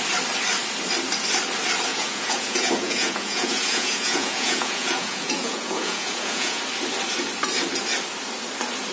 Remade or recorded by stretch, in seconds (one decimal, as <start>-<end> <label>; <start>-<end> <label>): 0.0-1.9 recorded; 1.9-6.6 remade; 6.6-8.9 recorded